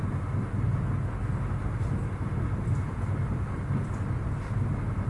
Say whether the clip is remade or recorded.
recorded